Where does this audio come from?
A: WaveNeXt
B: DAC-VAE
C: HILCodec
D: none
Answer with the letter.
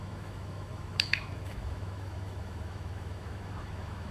B